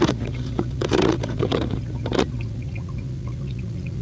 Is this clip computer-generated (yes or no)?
yes